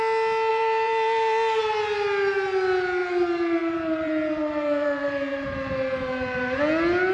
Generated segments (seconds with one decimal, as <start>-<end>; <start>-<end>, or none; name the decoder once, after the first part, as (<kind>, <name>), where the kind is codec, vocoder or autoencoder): 0.5-1.6 (vocoder, BigVGAN v2); 3.0-6.6